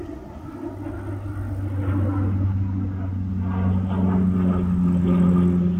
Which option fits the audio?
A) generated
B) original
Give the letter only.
B